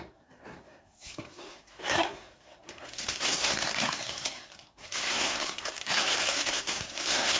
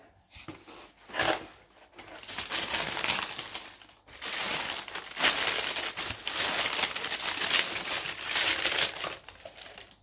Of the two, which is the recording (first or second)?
second